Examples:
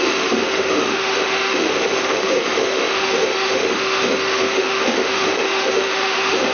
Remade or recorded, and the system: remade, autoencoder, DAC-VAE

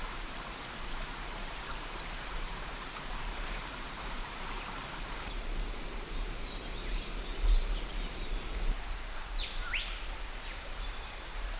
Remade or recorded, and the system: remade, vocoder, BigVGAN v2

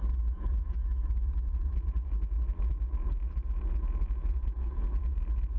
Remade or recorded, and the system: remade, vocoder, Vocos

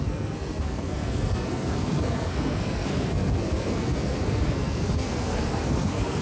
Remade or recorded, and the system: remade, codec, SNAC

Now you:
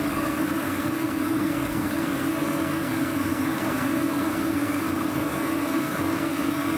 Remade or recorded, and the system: remade, codec, SNAC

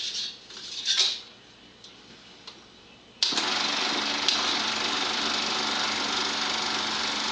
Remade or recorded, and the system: recorded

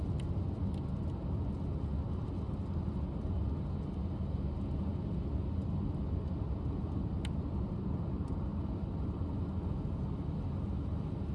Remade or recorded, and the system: recorded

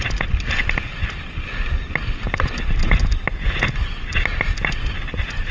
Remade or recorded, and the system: recorded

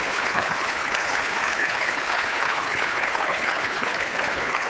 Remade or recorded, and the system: remade, codec, HILCodec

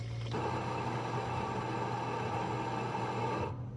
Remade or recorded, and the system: recorded